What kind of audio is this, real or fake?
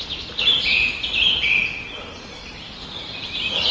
real